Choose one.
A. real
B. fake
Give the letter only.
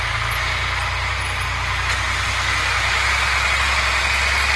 A